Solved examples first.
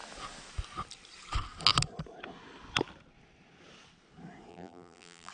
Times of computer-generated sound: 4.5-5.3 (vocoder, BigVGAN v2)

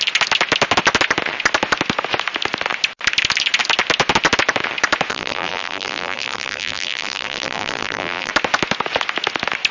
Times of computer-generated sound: 5.1-8.3 (vocoder, BigVGAN v2)

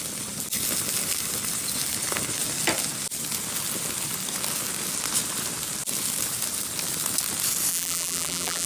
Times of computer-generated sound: 7.7-8.7 (vocoder, BigVGAN v2)

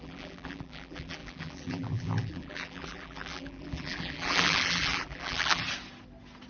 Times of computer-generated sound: 0.0-5.6 (vocoder, BigVGAN v2)

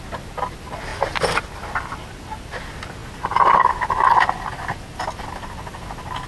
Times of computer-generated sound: none

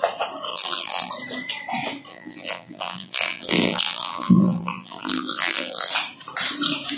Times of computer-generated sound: 0.5-1.1 (vocoder, BigVGAN v2); 2.1-5.9

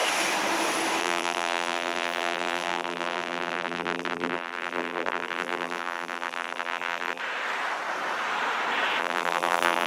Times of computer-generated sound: 1.0-7.2 (vocoder, BigVGAN v2); 9.0-9.9